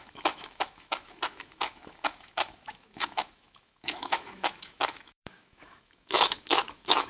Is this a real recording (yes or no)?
no